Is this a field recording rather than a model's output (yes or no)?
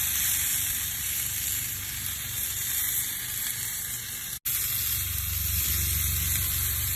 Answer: yes